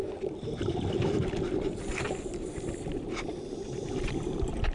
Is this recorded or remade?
recorded